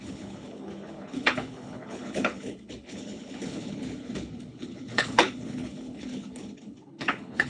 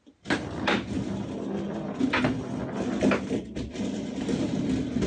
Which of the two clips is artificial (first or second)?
first